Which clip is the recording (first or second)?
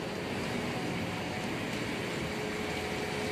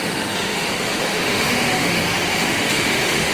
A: first